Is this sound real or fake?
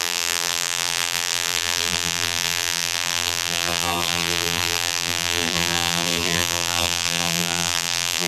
fake